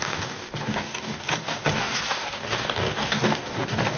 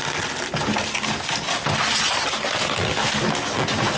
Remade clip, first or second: first